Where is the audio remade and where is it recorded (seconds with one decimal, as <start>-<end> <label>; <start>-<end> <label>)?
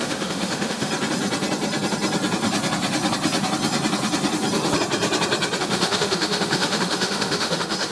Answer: 0.0-0.9 remade; 0.9-5.6 recorded; 5.6-7.9 remade